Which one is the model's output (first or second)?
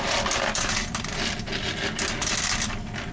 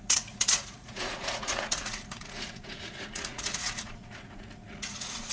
second